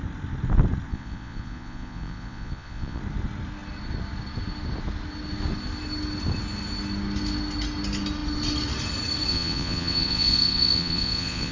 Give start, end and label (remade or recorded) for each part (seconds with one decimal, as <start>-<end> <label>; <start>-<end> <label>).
0.0-0.9 recorded; 0.9-3.0 remade; 3.0-9.3 recorded; 9.3-11.5 remade